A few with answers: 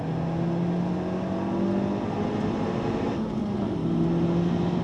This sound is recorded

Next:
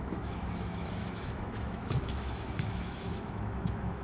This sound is remade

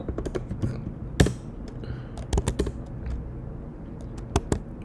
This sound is recorded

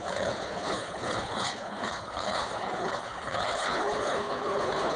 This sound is remade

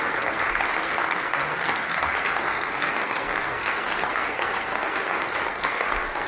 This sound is remade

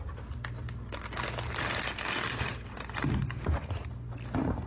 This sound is recorded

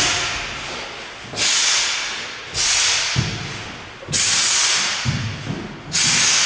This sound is recorded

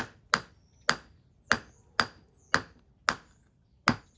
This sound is recorded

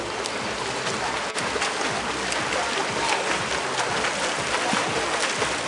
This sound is recorded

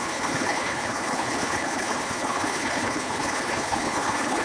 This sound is remade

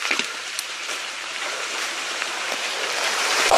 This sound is remade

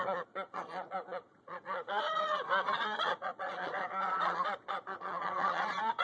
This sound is remade